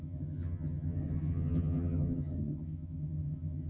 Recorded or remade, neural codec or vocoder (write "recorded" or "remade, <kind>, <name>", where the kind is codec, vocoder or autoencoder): remade, vocoder, HiFi-GAN